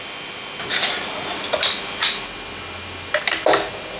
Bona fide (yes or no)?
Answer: yes